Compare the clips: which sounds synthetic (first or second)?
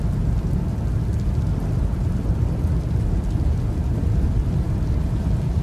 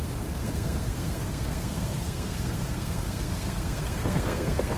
second